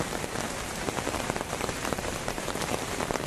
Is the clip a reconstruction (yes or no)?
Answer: yes